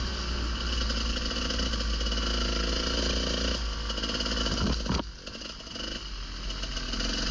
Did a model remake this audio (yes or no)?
no